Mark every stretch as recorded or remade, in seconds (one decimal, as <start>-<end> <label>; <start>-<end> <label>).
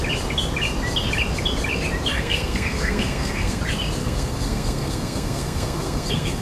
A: 0.0-2.1 recorded; 2.1-3.6 remade; 3.6-4.0 recorded; 4.0-6.4 remade